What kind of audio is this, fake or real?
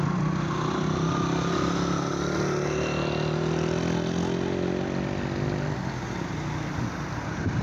real